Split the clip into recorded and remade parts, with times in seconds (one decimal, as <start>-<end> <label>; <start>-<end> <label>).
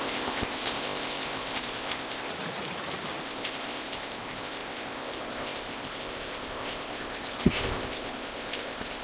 0.0-2.3 remade; 2.3-3.2 recorded; 3.2-9.0 remade